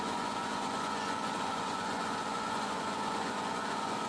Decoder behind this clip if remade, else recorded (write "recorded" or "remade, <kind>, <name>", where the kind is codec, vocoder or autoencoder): remade, vocoder, Vocos